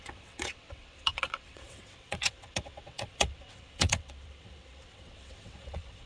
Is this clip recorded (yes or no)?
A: no